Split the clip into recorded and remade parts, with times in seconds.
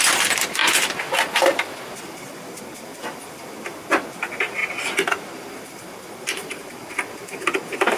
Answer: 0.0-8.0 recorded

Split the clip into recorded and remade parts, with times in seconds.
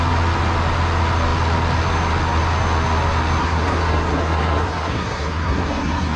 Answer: 0.0-3.4 recorded; 3.4-6.2 remade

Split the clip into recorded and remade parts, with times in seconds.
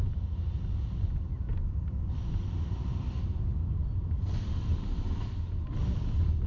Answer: 0.0-4.0 recorded; 4.0-5.7 remade; 5.7-6.5 recorded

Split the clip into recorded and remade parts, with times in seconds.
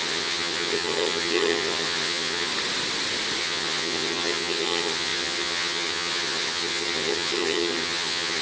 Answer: 0.0-2.5 remade; 2.5-3.4 recorded; 3.4-8.4 remade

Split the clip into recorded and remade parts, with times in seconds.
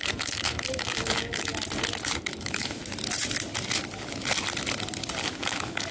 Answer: 0.0-1.5 remade; 1.5-2.3 recorded; 2.3-2.8 remade; 2.8-5.3 recorded; 5.3-5.9 remade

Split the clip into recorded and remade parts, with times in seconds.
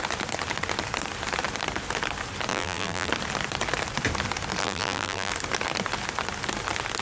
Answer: 0.0-2.5 recorded; 2.5-3.1 remade; 3.1-4.6 recorded; 4.6-5.3 remade; 5.3-7.0 recorded